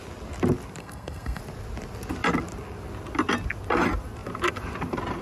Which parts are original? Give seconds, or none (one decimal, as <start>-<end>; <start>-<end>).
0.0-0.8; 1.4-5.2